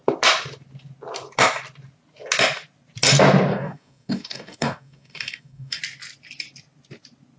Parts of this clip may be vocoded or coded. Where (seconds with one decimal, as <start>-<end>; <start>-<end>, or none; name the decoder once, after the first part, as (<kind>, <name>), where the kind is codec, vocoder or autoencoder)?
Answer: 3.5-5.8 (codec, DAC)